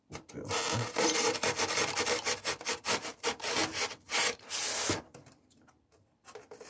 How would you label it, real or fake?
fake